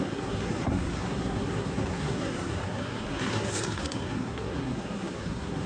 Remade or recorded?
remade